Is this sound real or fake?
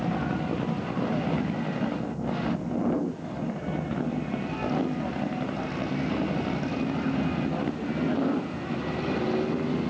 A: real